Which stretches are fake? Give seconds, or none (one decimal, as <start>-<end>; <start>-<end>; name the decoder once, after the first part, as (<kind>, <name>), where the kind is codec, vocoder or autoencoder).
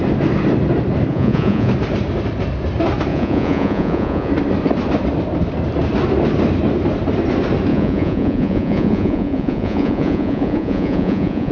1.1-1.7 (vocoder, Vocos); 3.1-4.3; 7.7-11.5